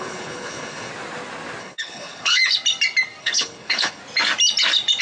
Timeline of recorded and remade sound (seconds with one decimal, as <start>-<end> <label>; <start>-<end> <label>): 0.0-0.9 remade; 0.9-1.6 recorded; 1.6-2.4 remade; 2.4-3.2 recorded; 3.2-4.0 remade; 4.0-5.0 recorded